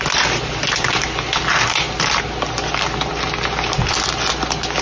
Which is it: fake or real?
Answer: real